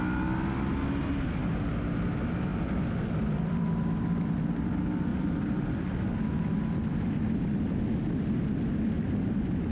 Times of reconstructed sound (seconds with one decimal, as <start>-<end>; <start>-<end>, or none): 2.5-4.4; 5.1-5.9; 6.9-7.8